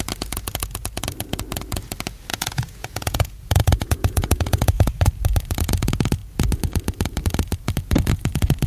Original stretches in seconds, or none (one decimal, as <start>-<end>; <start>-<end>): 0.0-2.3; 4.9-8.7